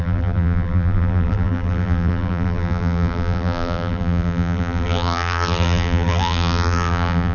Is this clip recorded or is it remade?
remade